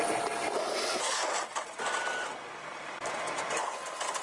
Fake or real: real